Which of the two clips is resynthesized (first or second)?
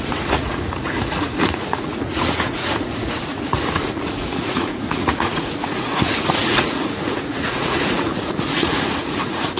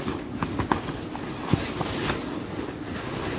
first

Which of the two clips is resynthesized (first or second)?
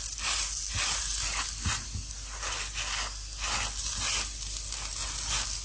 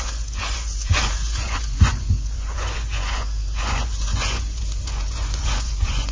second